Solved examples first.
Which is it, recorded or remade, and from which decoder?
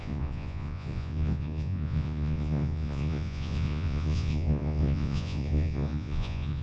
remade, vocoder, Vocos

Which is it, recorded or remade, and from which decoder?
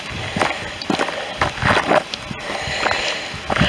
recorded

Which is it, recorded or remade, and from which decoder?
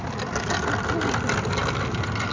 recorded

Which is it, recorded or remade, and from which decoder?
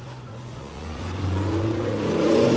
remade, vocoder, Vocos